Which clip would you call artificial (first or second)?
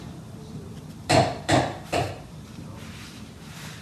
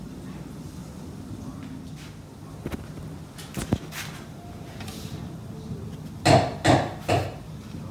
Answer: first